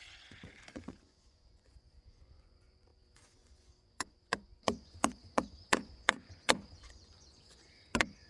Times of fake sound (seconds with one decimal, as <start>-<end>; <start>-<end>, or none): 0.0-8.3